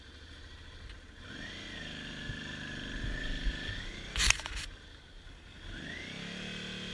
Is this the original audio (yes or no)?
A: yes